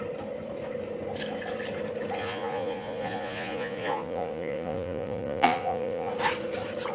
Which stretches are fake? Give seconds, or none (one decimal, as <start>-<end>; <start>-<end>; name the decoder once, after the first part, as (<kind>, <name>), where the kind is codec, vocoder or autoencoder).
2.2-6.1 (vocoder, Vocos)